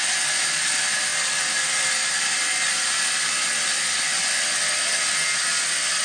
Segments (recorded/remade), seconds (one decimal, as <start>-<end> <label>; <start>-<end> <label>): 0.0-6.0 recorded